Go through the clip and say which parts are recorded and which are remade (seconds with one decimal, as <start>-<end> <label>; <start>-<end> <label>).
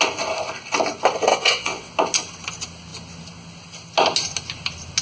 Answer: 0.0-1.3 recorded; 1.3-1.9 remade; 1.9-5.0 recorded